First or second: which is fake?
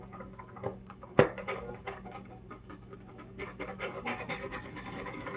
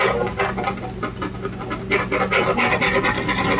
first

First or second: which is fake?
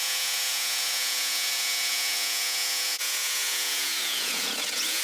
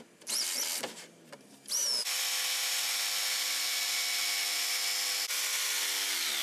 first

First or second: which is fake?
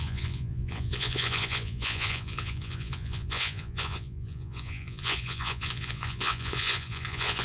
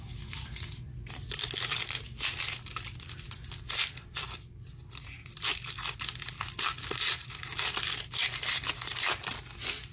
first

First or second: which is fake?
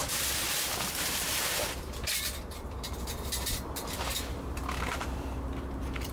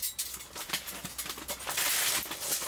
first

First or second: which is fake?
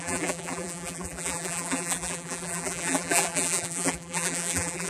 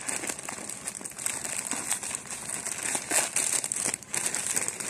first